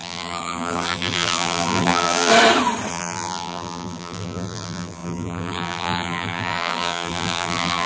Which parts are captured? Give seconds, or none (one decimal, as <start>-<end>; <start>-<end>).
2.3-2.9